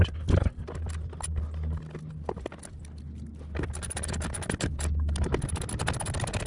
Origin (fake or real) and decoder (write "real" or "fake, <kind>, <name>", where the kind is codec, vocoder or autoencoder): real